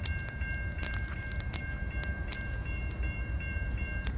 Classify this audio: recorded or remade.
remade